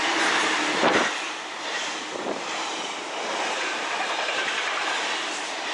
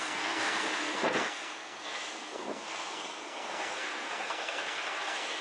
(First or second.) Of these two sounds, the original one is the first